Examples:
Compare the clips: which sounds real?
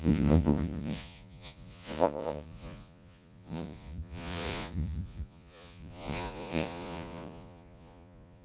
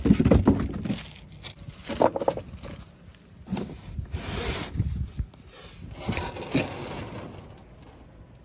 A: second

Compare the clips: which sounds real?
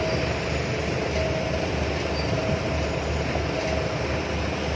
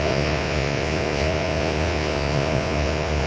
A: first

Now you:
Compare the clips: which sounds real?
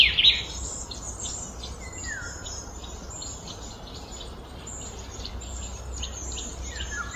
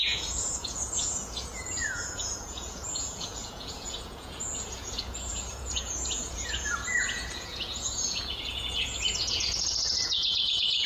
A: first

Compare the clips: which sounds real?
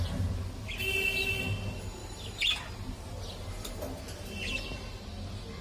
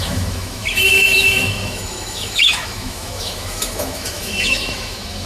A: first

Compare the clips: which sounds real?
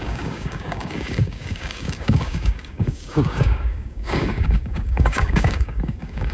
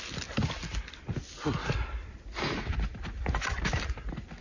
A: second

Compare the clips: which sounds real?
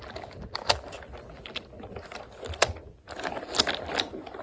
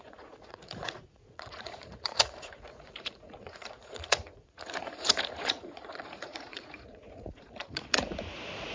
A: first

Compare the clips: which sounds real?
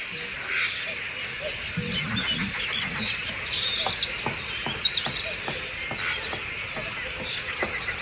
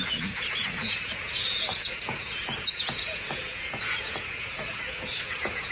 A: first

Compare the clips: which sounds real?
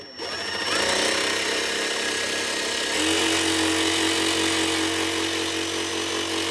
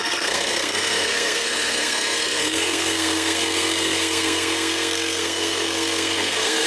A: first